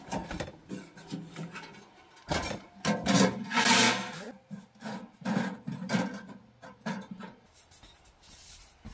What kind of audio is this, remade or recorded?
recorded